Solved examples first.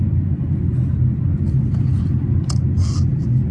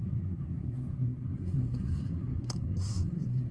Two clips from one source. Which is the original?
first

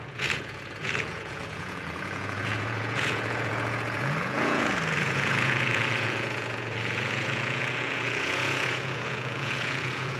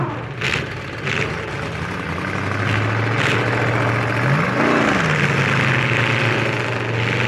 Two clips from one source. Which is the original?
second